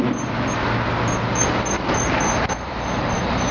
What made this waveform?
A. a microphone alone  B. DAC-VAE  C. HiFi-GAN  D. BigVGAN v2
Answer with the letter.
A